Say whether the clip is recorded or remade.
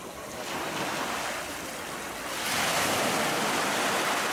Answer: recorded